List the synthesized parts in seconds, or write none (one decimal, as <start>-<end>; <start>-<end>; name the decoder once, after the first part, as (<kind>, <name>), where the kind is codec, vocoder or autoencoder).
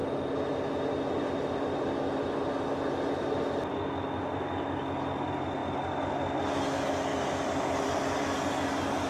7.1-8.5 (vocoder, BigVGAN v2)